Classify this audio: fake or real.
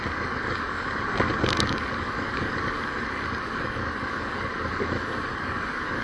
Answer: fake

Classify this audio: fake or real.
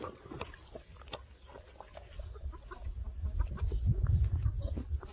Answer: real